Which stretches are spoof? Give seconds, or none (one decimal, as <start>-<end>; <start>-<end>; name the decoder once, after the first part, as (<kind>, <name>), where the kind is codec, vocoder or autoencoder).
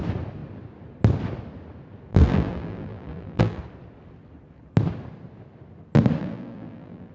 2.1-3.6 (vocoder, BigVGAN v2); 6.2-7.1